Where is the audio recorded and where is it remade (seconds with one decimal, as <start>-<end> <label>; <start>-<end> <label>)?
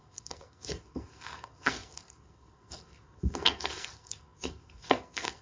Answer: 0.0-5.4 remade